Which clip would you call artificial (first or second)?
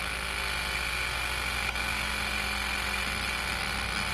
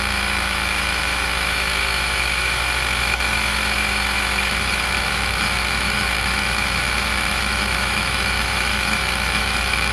second